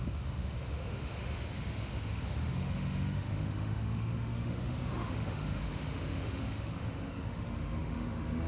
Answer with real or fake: fake